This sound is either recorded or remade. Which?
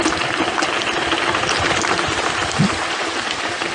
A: recorded